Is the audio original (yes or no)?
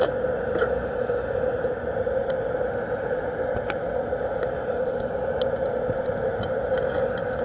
yes